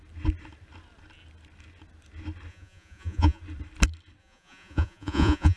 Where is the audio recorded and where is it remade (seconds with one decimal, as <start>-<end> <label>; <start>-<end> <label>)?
0.0-2.5 recorded; 2.5-3.4 remade; 3.4-4.2 recorded; 4.2-5.6 remade

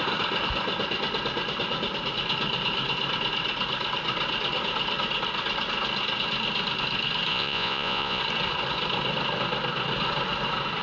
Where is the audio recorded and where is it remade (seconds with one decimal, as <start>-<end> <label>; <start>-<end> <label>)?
0.0-7.3 recorded; 7.3-8.2 remade; 8.2-10.8 recorded

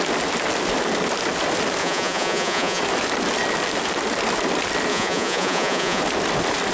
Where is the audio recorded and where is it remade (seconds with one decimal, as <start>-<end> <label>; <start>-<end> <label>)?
0.0-1.8 recorded; 1.8-2.8 remade; 2.8-4.9 recorded; 4.9-6.0 remade; 6.0-6.7 recorded

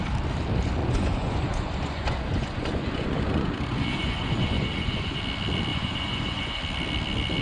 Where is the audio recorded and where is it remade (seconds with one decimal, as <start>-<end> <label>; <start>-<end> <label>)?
0.0-0.8 recorded; 0.8-5.2 remade; 5.2-5.7 recorded; 5.7-6.6 remade; 6.6-7.4 recorded

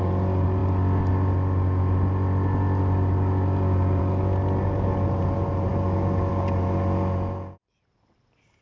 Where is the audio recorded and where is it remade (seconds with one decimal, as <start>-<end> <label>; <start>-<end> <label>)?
0.0-8.6 recorded

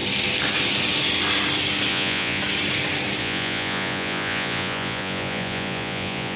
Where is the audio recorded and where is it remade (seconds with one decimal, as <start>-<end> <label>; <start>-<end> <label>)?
0.0-1.9 recorded; 1.9-2.4 remade; 2.4-3.2 recorded; 3.2-6.4 remade